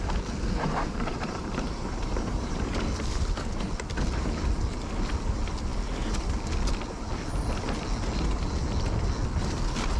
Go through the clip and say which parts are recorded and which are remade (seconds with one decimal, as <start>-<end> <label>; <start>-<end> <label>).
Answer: 0.0-1.1 recorded; 1.1-3.2 remade; 3.2-10.0 recorded

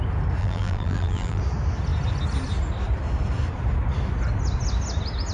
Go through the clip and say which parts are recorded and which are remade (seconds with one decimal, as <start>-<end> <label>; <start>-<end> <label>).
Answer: 0.0-0.4 recorded; 0.4-1.4 remade; 1.4-5.3 recorded